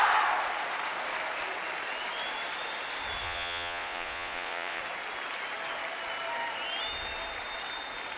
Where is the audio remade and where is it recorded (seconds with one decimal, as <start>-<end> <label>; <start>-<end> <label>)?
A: 0.0-3.2 recorded; 3.2-4.8 remade; 4.8-8.2 recorded